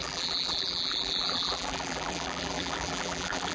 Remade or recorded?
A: remade